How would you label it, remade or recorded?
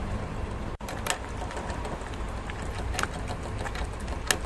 recorded